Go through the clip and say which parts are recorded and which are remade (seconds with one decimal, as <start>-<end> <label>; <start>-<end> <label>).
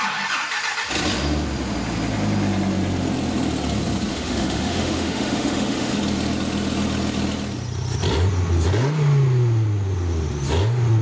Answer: 0.0-4.1 recorded; 4.1-6.0 remade; 6.0-11.0 recorded